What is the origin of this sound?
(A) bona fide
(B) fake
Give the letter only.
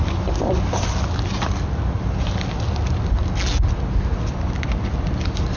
A